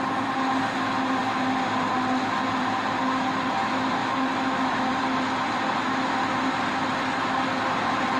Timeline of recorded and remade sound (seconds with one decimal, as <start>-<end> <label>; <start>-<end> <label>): 0.0-4.0 recorded; 4.0-4.9 remade; 4.9-8.2 recorded